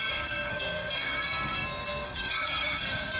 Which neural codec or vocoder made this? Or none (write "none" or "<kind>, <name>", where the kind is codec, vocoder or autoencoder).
codec, SNAC